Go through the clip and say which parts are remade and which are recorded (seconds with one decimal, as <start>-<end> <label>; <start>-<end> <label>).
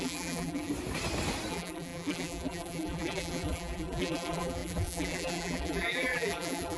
0.0-0.7 remade; 0.7-1.5 recorded; 1.5-6.8 remade